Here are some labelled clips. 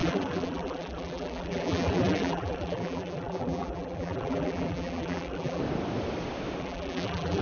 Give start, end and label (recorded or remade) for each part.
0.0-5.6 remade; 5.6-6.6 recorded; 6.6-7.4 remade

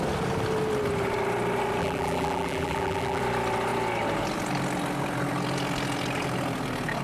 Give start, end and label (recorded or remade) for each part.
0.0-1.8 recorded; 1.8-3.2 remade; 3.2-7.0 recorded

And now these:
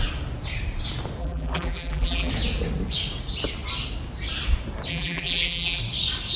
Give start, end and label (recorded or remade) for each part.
0.0-1.2 recorded; 1.2-2.3 remade; 2.3-4.9 recorded; 4.9-5.8 remade; 5.8-6.4 recorded

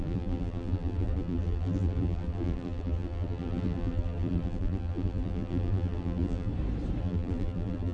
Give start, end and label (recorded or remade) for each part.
0.0-6.5 remade; 6.5-7.0 recorded; 7.0-7.9 remade